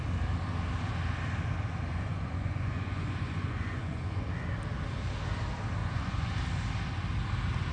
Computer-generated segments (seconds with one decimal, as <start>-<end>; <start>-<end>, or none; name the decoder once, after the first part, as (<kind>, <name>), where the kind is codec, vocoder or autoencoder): 1.9-4.3 (vocoder, Vocos); 5.8-6.3